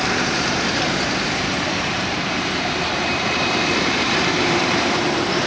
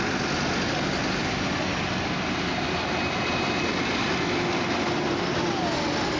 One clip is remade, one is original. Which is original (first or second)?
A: second